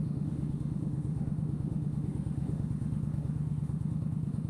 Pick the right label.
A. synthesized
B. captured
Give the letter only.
A